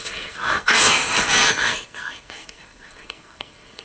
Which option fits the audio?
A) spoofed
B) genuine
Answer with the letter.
A